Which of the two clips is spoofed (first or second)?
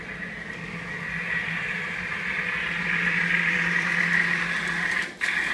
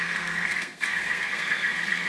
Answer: second